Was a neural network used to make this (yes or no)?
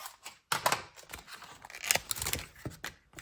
no